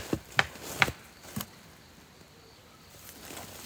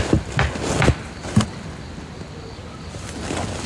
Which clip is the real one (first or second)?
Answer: second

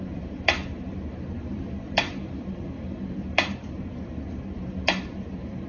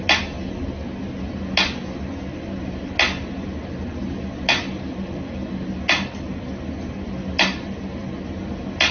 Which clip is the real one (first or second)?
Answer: second